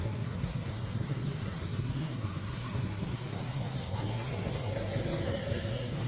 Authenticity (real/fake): fake